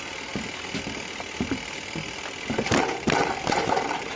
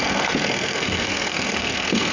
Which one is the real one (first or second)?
first